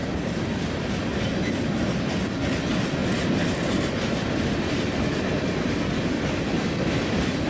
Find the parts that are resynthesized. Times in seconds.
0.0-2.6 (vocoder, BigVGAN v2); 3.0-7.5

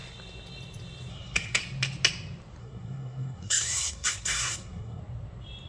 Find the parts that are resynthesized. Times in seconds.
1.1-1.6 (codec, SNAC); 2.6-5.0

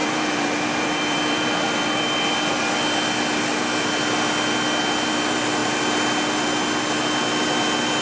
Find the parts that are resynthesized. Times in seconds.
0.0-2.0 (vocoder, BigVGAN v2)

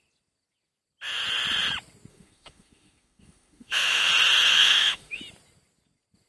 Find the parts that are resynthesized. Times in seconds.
2.1-4.1 (autoencoder, DAC-VAE); 4.5-5.2

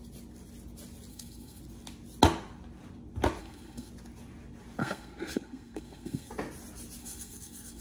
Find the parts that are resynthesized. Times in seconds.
1.1-1.6 (codec, SNAC); 3.4-3.9; 4.8-6.3; 7.0-7.8

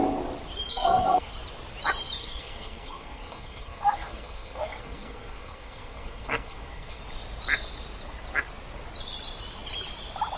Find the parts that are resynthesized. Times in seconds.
0.7-1.3 (codec, SNAC); 2.2-7.0

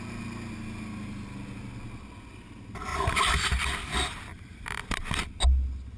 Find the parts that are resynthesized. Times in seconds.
2.9-3.5 (vocoder, BigVGAN v2); 4.3-5.0

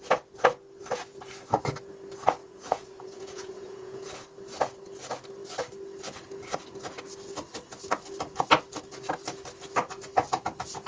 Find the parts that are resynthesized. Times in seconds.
2.4-4.1 (vocoder, Vocos)